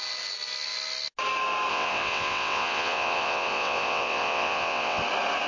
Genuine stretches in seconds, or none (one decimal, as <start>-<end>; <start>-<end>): 0.0-1.7; 5.0-5.5